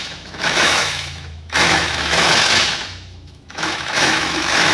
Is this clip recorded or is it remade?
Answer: remade